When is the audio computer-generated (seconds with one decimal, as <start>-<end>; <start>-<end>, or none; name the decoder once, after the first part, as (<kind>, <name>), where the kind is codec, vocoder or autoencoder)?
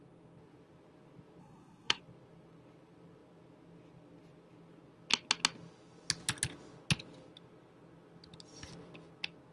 1.4-2.0 (codec, SNAC)